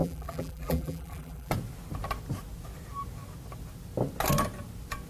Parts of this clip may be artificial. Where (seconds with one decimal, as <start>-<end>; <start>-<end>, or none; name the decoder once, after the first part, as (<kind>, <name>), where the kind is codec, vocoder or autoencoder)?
0.0-1.5 (vocoder, BigVGAN v2)